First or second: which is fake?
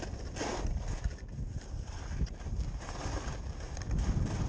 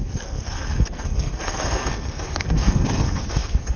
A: second